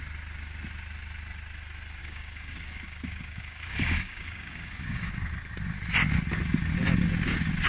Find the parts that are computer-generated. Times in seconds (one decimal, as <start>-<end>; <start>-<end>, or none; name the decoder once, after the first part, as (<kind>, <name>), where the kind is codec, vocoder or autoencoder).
2.0-5.1 (codec, DAC)